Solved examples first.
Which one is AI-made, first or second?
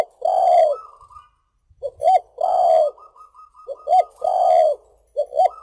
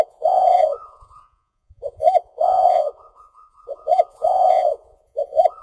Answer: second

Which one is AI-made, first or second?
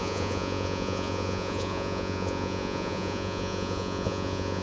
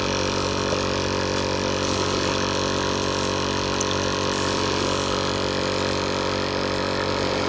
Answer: first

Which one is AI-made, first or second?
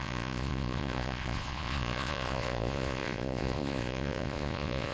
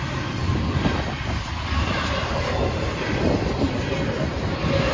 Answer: first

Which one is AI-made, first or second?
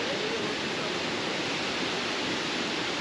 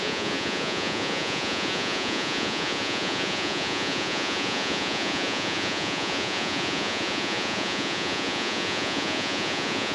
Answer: second